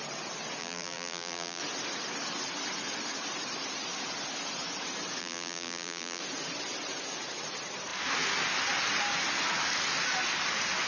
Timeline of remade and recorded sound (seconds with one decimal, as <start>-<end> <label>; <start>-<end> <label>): 0.0-0.6 recorded; 0.6-1.6 remade; 1.6-5.2 recorded; 5.2-6.2 remade; 6.2-10.9 recorded